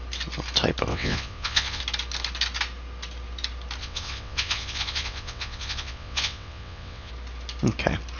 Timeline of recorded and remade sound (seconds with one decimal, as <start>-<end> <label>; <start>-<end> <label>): 0.0-0.9 recorded; 0.9-1.8 remade; 1.8-3.8 recorded; 3.8-7.1 remade; 7.1-8.2 recorded